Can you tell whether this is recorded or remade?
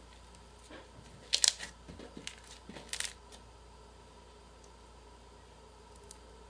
recorded